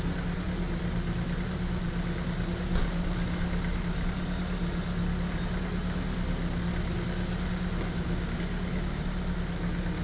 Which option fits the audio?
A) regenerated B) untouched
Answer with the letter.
B